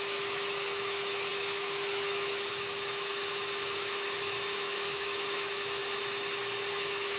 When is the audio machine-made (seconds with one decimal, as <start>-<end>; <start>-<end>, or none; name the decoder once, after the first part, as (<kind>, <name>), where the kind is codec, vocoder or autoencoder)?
0.0-5.8 (autoencoder, DAC-VAE); 6.7-7.2